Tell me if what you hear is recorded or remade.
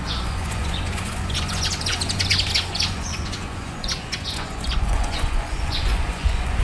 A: remade